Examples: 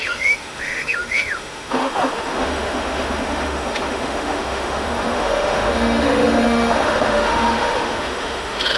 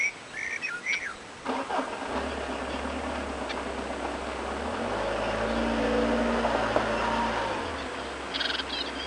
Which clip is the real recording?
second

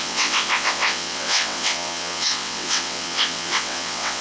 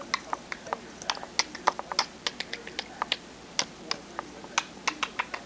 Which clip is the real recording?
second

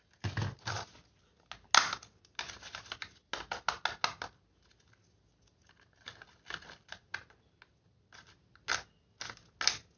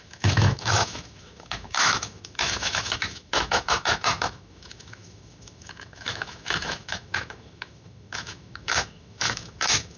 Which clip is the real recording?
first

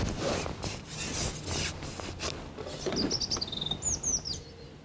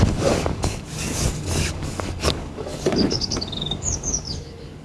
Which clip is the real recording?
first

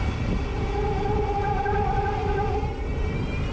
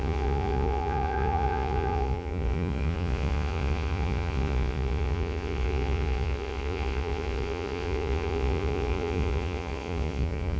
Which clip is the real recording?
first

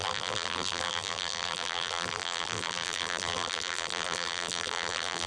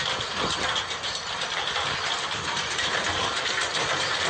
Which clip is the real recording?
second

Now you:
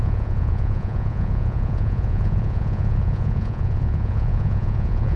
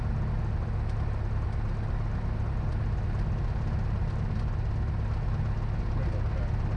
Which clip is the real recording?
second